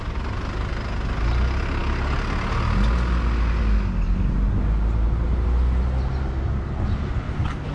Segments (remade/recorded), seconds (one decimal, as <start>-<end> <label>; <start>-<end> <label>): 0.0-7.7 recorded